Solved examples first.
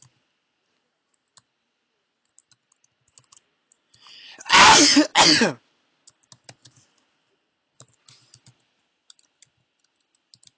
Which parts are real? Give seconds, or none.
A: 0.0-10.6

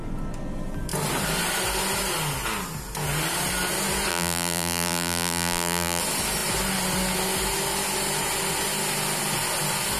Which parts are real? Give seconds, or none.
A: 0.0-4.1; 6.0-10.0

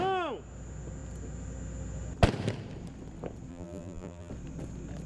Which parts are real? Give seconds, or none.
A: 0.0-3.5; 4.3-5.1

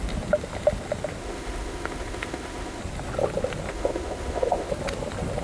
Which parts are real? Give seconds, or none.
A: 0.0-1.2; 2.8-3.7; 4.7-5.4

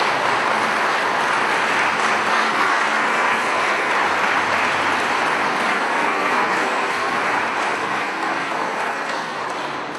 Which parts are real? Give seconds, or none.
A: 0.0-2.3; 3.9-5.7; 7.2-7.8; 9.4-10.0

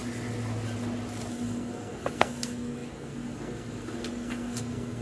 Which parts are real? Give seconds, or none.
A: 0.0-1.3